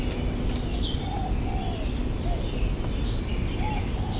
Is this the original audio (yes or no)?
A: yes